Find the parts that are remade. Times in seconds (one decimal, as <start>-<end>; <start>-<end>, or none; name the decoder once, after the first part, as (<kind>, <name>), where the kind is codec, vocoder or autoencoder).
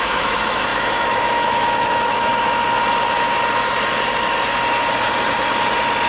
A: 0.0-2.3 (autoencoder, DAC-VAE)